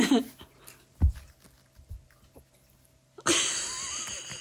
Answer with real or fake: real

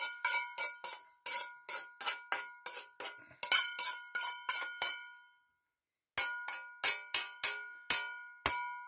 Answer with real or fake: real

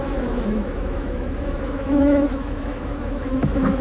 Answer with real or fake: fake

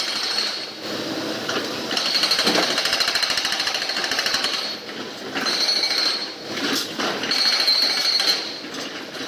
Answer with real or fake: real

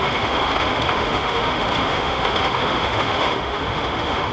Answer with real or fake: fake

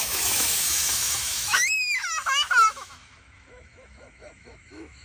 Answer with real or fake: fake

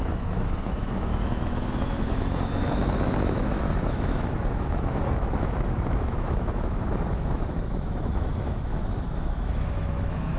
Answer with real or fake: fake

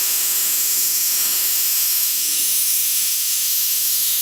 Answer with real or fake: fake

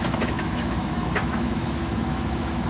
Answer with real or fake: fake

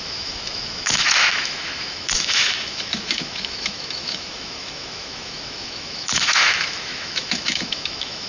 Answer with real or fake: fake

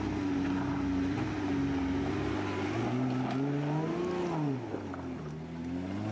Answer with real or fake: real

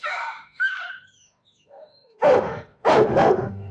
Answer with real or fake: fake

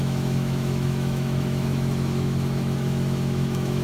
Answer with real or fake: fake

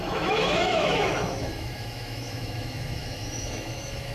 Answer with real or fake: fake